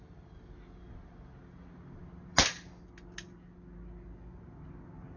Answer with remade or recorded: recorded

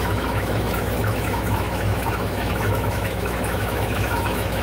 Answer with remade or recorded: remade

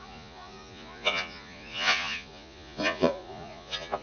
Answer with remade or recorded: remade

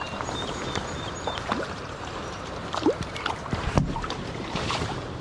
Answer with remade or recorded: remade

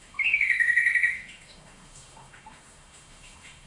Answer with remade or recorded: remade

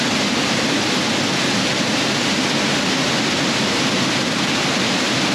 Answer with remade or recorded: recorded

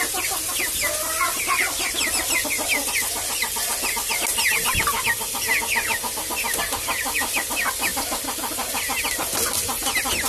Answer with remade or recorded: recorded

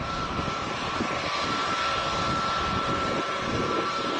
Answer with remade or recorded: recorded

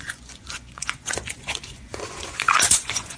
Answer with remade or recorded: remade